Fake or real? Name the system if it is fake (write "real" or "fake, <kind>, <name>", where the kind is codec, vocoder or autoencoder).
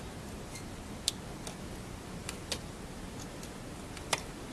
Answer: real